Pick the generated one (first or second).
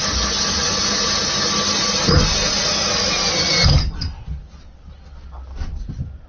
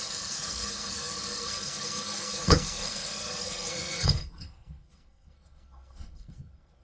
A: second